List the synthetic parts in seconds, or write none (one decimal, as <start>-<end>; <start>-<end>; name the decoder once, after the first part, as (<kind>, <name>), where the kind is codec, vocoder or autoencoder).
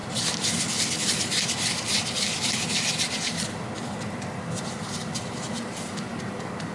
none